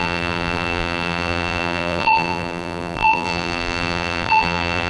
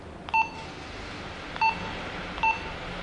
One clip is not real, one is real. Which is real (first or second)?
second